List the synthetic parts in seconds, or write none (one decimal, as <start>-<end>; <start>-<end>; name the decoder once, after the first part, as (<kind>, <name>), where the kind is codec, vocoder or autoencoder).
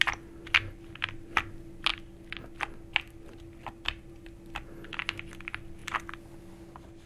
none